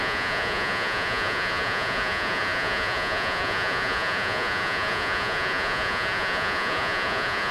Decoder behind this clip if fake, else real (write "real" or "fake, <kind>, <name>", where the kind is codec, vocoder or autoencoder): fake, vocoder, Vocos